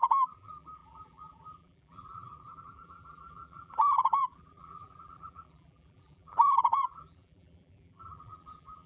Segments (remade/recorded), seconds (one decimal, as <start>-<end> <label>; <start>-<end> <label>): 0.0-8.9 remade